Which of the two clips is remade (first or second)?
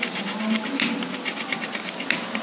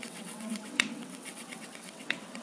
second